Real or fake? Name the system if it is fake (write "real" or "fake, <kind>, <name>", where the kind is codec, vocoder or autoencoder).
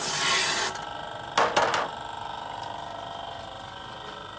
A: real